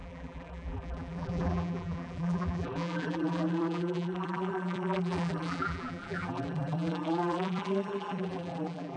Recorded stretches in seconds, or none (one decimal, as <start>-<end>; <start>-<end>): none